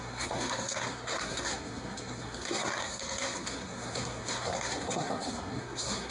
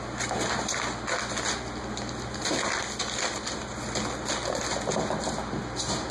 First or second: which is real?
second